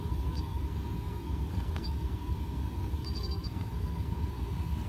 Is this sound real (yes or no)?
no